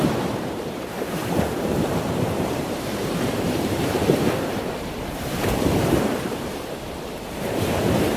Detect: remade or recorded remade